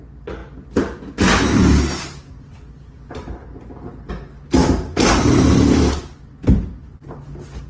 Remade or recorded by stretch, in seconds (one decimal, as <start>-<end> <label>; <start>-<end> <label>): 0.0-4.6 recorded; 4.6-5.9 remade; 5.9-7.7 recorded